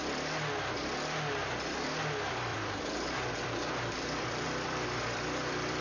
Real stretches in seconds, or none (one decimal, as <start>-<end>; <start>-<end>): 0.0-2.5